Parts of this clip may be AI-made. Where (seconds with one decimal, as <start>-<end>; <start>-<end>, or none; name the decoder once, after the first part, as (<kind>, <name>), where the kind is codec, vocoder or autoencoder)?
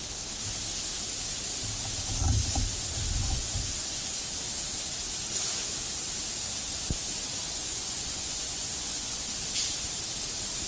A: 3.2-4.2 (vocoder, Vocos); 7.6-9.3